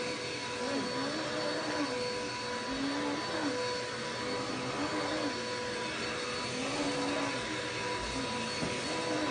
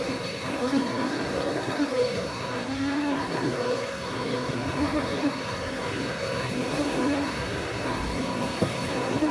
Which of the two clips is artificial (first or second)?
second